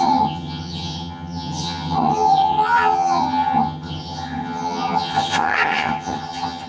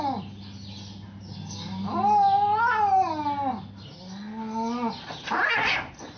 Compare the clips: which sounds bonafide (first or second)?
second